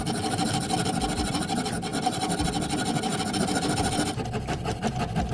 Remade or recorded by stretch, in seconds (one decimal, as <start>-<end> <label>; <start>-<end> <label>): 0.0-3.1 recorded; 3.1-5.3 remade